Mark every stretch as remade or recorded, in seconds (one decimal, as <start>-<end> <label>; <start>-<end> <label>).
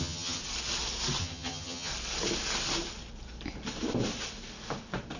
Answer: 0.0-0.4 remade; 0.4-1.2 recorded; 1.2-1.9 remade; 1.9-5.2 recorded